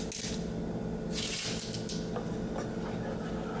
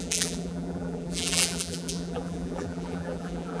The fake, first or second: second